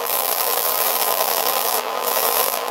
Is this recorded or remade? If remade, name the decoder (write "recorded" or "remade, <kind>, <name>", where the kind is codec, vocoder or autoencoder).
remade, vocoder, BigVGAN v2